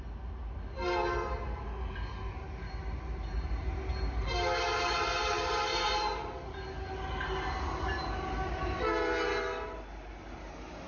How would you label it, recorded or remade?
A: recorded